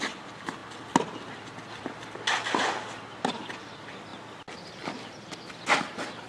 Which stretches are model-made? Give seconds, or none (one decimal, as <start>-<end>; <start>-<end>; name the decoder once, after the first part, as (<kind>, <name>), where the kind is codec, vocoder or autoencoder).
none